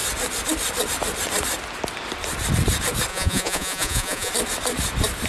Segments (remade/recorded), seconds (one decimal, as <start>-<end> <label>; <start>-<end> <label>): 0.0-3.1 recorded; 3.1-4.3 remade; 4.3-5.3 recorded